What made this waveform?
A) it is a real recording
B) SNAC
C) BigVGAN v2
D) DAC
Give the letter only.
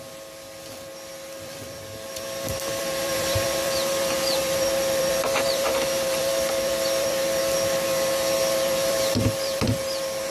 C